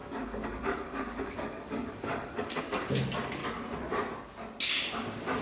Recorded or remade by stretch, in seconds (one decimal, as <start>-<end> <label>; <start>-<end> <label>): 0.0-2.6 remade; 2.6-5.4 recorded